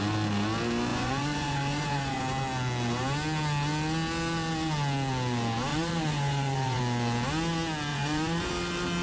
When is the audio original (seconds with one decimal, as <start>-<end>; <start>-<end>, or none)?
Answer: 0.0-0.9; 2.2-5.7; 6.8-7.9; 8.5-9.0